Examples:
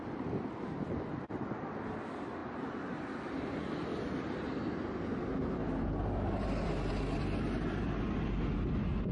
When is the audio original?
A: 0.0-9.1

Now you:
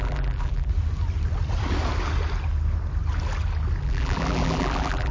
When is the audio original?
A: 0.7-3.8

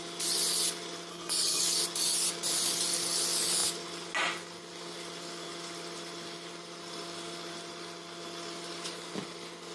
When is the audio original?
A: 0.0-1.1; 1.6-9.7

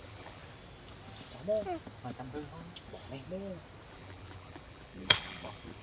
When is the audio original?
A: 0.4-3.9

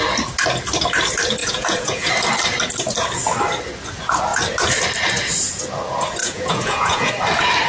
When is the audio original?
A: 0.0-1.4; 2.1-6.2; 7.1-7.7

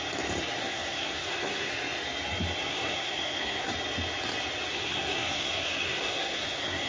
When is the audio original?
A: 0.0-0.6; 1.7-2.7; 3.7-4.7

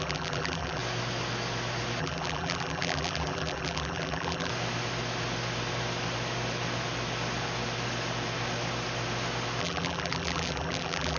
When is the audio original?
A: 0.8-2.0; 4.5-9.6